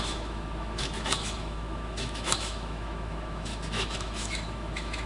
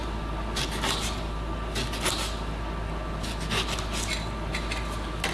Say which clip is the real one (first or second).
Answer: second